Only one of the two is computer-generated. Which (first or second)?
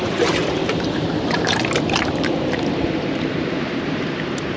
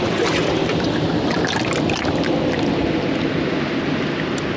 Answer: first